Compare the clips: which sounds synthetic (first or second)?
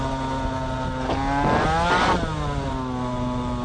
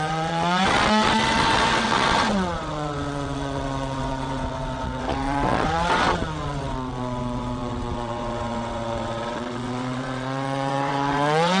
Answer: second